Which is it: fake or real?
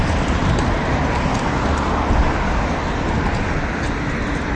real